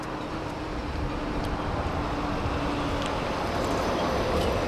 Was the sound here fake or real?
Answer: real